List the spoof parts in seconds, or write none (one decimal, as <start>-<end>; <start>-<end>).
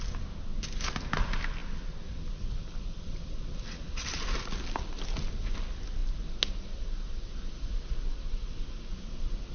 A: none